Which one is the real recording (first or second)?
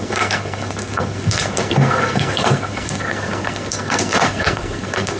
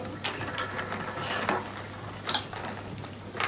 second